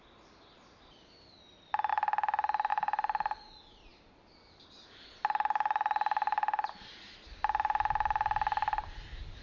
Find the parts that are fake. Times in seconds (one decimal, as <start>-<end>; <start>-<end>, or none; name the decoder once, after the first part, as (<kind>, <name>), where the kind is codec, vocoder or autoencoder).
none